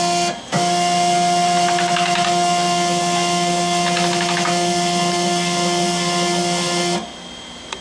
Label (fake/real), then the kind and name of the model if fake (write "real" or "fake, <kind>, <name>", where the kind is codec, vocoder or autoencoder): real